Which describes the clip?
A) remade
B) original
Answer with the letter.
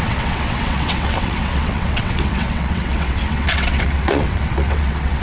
A